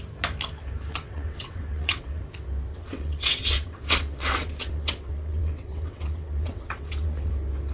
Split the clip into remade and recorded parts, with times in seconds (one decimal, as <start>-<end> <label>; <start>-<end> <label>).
0.0-0.9 recorded; 0.9-2.2 remade; 2.2-2.7 recorded; 2.7-7.3 remade; 7.3-7.7 recorded